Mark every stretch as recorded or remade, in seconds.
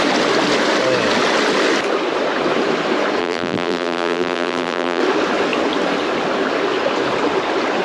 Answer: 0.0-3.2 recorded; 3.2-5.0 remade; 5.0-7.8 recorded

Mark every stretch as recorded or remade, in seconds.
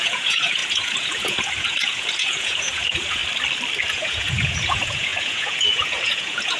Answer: 0.0-3.2 remade; 3.2-3.8 recorded; 3.8-6.6 remade